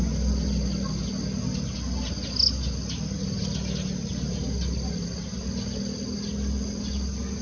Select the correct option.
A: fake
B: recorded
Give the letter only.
B